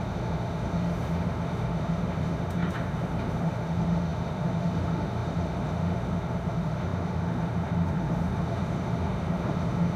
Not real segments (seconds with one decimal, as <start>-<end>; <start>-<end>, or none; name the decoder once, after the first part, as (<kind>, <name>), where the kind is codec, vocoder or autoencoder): 0.0-10.0 (autoencoder, DAC-VAE)